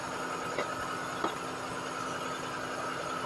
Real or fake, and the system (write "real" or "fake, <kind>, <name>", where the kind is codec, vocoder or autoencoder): real